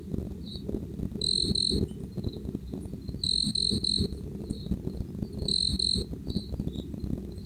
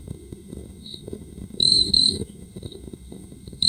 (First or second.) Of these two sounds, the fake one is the second